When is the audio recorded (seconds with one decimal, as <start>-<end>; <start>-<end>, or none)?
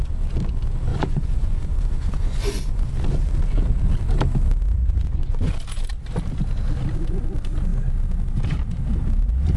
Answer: 0.0-0.9; 2.9-4.8; 5.5-9.6